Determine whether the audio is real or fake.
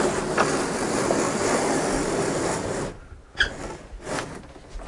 real